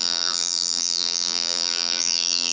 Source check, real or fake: fake